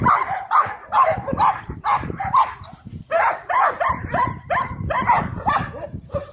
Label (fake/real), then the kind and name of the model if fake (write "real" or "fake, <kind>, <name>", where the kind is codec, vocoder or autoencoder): fake, vocoder, BigVGAN v2